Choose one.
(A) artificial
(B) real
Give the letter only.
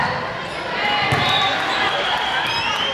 B